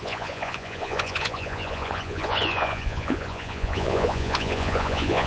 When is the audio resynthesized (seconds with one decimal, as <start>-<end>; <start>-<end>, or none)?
0.0-5.3